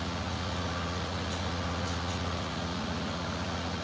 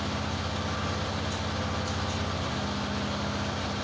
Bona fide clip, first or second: second